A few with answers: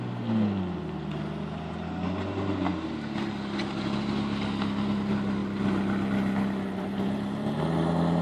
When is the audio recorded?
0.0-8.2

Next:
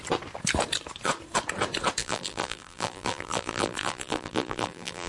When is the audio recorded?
0.0-2.0